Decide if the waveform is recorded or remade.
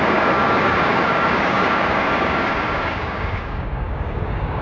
remade